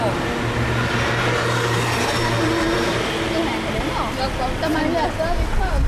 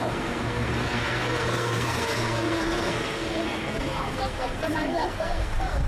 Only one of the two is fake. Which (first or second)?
second